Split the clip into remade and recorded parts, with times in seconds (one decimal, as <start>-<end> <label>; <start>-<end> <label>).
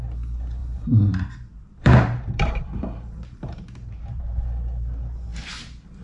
0.0-0.6 recorded; 0.6-4.2 remade; 4.2-6.0 recorded